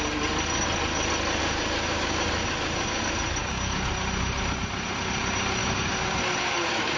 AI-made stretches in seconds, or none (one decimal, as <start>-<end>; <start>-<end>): 1.4-3.0; 3.4-3.9; 5.6-7.0